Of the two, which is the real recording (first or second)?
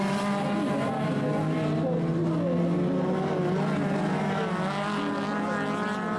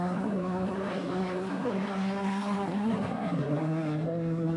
first